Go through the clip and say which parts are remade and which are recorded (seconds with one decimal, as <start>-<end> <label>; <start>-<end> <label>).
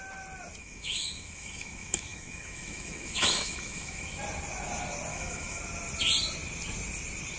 0.0-0.6 recorded; 0.6-4.2 remade; 4.2-5.1 recorded; 5.1-5.6 remade; 5.6-7.4 recorded